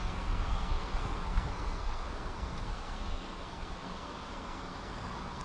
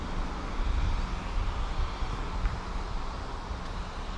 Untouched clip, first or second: second